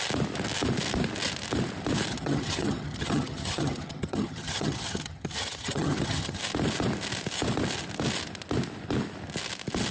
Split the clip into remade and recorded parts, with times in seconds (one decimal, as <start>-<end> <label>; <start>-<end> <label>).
0.0-2.1 recorded; 2.1-6.4 remade; 6.4-9.9 recorded